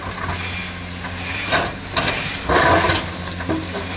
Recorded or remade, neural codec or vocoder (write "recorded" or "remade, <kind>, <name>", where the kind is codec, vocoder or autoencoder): recorded